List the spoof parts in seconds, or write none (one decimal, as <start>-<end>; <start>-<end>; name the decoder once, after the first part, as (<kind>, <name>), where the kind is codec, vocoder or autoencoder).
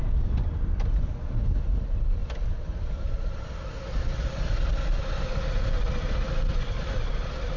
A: none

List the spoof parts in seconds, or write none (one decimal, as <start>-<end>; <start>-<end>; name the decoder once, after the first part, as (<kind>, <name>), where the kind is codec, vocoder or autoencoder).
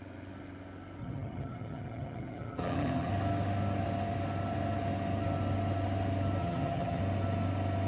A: 1.0-3.1 (vocoder, HiFi-GAN); 6.4-7.0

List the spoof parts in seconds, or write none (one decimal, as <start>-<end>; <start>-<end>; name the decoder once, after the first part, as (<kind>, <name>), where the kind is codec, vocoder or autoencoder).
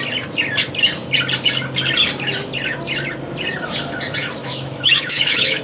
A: 4.4-5.6 (autoencoder, DAC-VAE)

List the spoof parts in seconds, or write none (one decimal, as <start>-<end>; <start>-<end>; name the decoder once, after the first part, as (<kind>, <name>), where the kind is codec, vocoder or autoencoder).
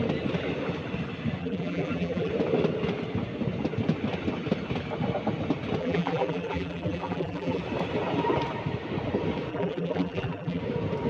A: 1.4-2.3 (vocoder, BigVGAN v2); 5.8-7.6; 9.5-10.6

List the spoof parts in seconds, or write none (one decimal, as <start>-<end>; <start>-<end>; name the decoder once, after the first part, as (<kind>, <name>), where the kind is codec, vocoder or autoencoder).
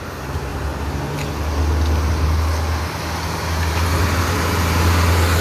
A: none